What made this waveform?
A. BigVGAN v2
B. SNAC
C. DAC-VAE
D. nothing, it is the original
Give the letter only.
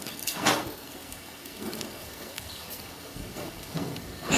B